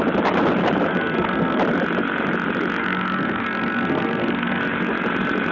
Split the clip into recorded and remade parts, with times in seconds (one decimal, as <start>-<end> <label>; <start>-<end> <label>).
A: 0.0-0.9 recorded; 0.9-1.6 remade; 1.6-2.8 recorded; 2.8-4.6 remade; 4.6-5.5 recorded